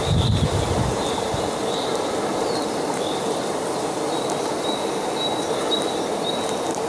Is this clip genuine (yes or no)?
yes